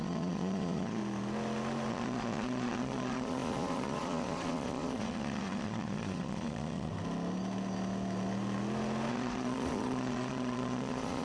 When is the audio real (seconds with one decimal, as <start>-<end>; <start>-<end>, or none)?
1.0-1.9; 6.9-9.1